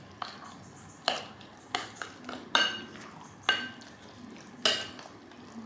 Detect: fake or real real